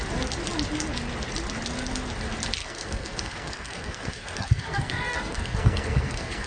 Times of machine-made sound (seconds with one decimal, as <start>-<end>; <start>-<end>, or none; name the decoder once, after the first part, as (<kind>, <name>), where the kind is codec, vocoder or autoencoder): 2.6-6.5 (codec, SNAC)